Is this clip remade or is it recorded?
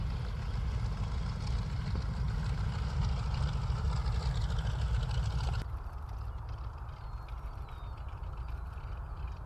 recorded